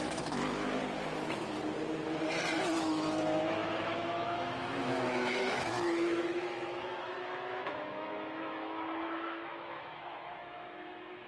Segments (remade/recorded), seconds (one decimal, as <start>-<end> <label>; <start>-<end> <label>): 0.0-0.8 remade; 0.8-2.8 recorded; 2.8-11.3 remade